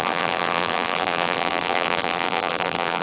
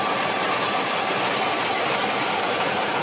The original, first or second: second